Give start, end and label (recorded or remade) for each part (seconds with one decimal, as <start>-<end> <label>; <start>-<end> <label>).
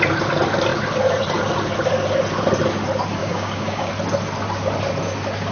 0.0-3.2 recorded; 3.2-3.9 remade; 3.9-5.5 recorded